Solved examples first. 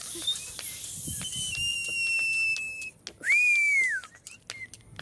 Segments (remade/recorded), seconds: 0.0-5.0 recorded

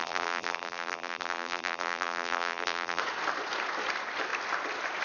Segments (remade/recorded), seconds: 0.0-3.0 remade; 3.0-5.0 recorded

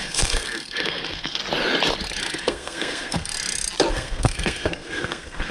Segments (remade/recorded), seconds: 0.0-1.4 remade; 1.4-2.2 recorded; 2.2-3.3 remade; 3.3-3.9 recorded; 3.9-5.5 remade

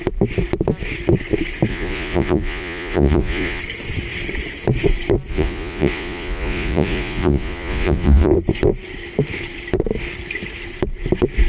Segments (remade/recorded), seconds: 0.0-1.7 recorded; 1.7-3.6 remade; 3.6-5.3 recorded; 5.3-8.3 remade; 8.3-11.5 recorded

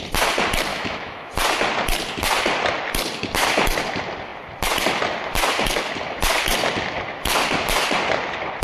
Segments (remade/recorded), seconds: 0.0-0.7 recorded; 0.7-1.3 remade; 1.3-8.6 recorded

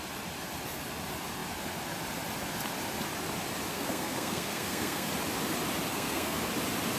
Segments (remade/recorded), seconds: 0.0-3.7 recorded; 3.7-5.1 remade; 5.1-5.9 recorded; 5.9-6.5 remade; 6.5-7.0 recorded